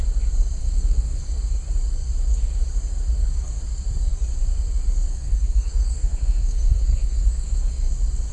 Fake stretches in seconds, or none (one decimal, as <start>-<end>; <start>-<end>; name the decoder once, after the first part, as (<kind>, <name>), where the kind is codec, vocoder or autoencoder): 0.6-1.2 (codec, SNAC); 5.1-7.9